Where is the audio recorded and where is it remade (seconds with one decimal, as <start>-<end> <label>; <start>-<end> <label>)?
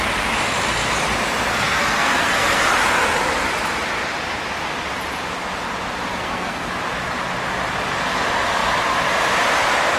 0.0-1.5 recorded; 1.5-2.6 remade; 2.6-6.1 recorded; 6.1-6.7 remade; 6.7-10.0 recorded